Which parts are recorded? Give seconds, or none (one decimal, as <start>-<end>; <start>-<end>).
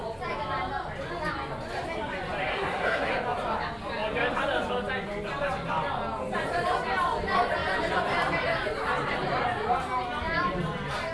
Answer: 0.0-2.5; 3.1-11.1